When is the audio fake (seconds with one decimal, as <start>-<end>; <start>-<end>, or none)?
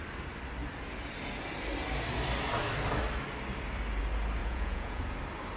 4.4-5.0